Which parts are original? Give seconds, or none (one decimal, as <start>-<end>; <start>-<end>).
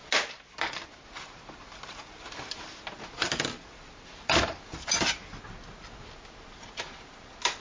0.0-7.6